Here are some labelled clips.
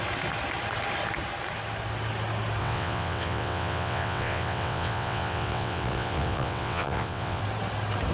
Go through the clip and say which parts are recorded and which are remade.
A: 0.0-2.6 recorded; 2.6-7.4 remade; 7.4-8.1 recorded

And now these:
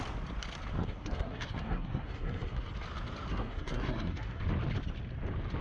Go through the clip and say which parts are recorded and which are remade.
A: 0.0-0.8 recorded; 0.8-2.7 remade; 2.7-3.3 recorded; 3.3-4.4 remade; 4.4-5.6 recorded

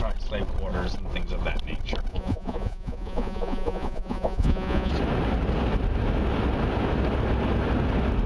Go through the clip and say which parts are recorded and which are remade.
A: 0.0-2.1 recorded; 2.1-4.9 remade; 4.9-8.3 recorded